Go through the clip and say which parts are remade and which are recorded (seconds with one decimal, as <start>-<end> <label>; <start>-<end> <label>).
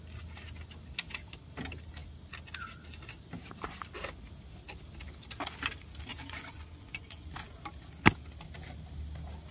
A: 0.0-6.1 recorded; 6.1-7.3 remade; 7.3-9.5 recorded